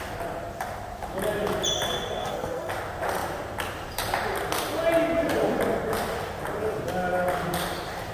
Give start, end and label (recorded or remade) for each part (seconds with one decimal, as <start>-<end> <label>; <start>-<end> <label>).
0.0-2.2 recorded; 2.2-2.7 remade; 2.7-8.1 recorded